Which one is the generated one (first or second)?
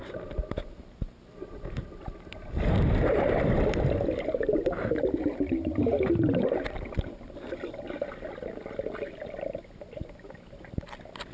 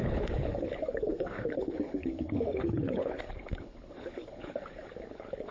second